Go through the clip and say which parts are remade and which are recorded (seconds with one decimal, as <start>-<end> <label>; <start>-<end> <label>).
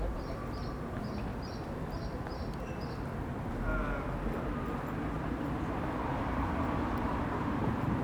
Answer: 0.0-1.3 remade; 1.3-5.1 recorded; 5.1-8.0 remade